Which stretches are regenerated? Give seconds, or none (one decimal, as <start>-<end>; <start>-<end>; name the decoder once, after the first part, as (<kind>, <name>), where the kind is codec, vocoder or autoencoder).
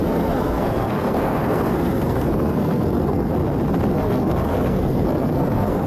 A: 0.0-3.3 (codec, SNAC); 3.9-5.9